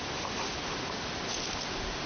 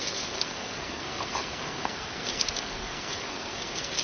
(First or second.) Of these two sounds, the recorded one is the first